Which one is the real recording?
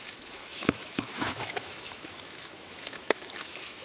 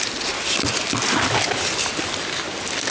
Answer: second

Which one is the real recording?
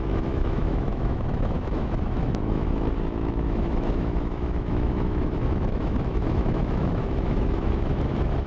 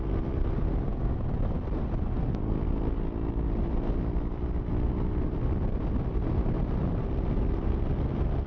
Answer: second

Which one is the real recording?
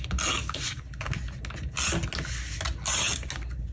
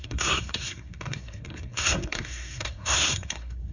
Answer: first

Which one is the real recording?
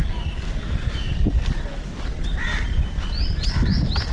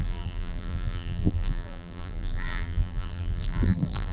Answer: first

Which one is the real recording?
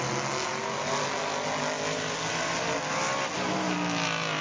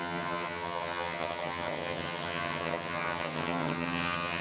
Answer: first